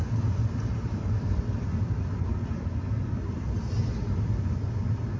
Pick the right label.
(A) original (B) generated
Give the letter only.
A